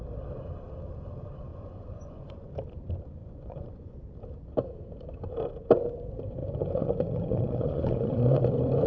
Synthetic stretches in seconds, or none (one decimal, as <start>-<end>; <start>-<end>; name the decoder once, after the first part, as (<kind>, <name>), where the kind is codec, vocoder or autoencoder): 1.5-2.5 (vocoder, Vocos); 3.2-3.9; 6.4-8.4